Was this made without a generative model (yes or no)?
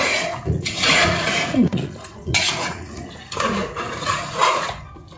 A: no